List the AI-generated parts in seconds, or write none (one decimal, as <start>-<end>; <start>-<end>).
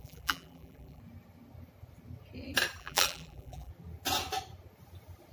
0.0-1.0; 2.8-3.7